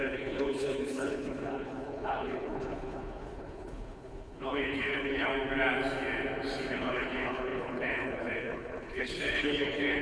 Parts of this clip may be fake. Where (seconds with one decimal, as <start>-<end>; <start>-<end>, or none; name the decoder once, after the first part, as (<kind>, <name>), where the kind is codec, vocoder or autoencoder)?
0.0-5.3 (codec, HILCodec); 6.7-10.0